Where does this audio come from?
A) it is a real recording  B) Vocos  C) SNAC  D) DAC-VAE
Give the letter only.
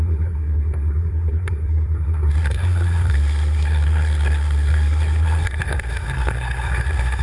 C